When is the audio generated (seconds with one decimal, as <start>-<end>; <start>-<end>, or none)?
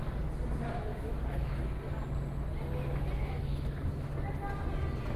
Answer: 0.9-1.6; 3.2-4.1